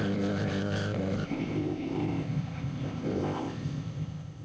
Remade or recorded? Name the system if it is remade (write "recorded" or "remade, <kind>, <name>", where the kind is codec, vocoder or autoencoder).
remade, codec, ZipCodec